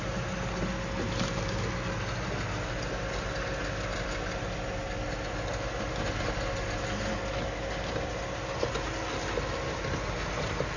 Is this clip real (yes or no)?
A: yes